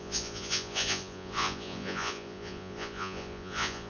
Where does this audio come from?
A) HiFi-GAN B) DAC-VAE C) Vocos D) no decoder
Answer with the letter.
C